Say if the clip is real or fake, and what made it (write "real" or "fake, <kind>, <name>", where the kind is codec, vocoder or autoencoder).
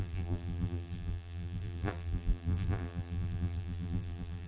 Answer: fake, vocoder, BigVGAN v2